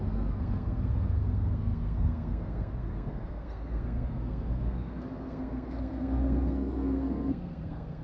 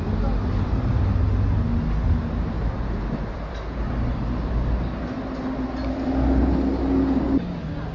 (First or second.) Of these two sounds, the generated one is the first